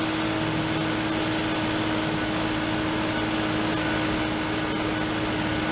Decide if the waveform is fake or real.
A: real